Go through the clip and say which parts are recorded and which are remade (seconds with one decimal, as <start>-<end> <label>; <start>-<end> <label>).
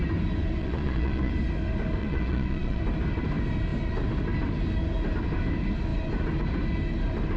0.0-0.6 recorded; 0.6-1.3 remade; 1.3-2.0 recorded; 2.0-2.8 remade; 2.8-7.4 recorded